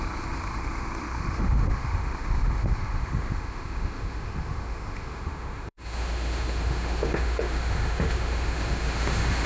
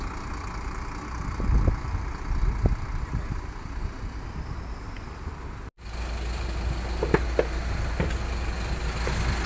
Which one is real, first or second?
second